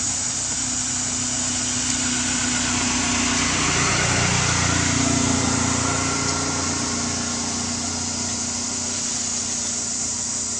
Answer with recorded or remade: recorded